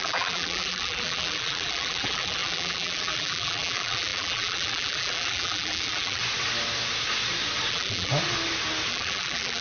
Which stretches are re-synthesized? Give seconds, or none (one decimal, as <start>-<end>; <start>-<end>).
0.0-6.2; 7.7-8.1; 8.9-9.6